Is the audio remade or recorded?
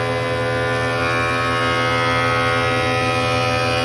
recorded